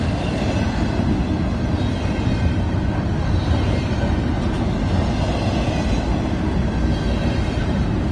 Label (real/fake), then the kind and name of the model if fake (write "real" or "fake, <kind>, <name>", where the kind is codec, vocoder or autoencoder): real